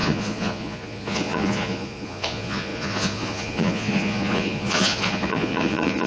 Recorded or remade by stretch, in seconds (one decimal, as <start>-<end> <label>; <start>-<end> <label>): 0.0-6.1 remade